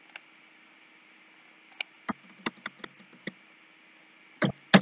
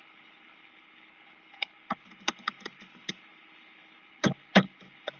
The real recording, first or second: first